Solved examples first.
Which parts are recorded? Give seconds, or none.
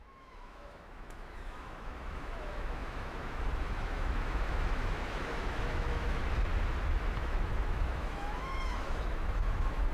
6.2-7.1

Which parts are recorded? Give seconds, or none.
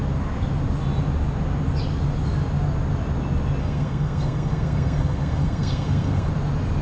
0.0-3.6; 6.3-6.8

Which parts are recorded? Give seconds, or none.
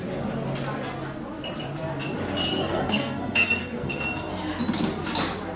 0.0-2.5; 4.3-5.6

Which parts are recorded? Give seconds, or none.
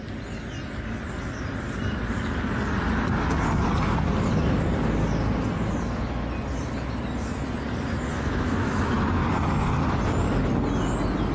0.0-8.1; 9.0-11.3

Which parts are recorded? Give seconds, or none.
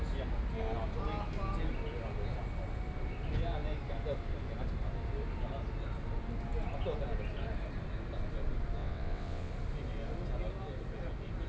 0.0-8.8; 9.5-11.5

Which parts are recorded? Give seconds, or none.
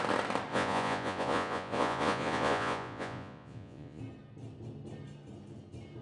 0.0-0.5; 4.0-6.0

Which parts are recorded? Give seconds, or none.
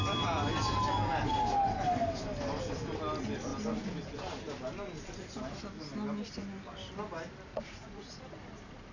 0.0-7.5; 8.2-8.9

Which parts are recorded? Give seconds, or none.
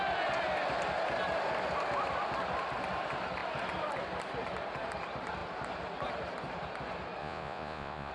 0.0-7.2